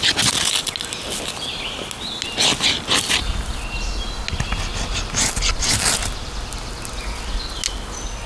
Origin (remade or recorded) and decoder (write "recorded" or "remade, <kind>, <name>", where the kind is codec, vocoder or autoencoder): recorded